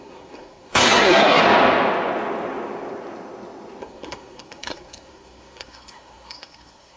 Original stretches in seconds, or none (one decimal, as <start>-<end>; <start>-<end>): 1.4-3.8